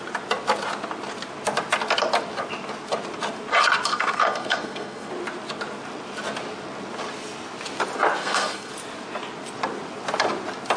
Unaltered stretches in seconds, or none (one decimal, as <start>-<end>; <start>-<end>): 0.0-3.9; 5.1-8.2; 8.7-10.8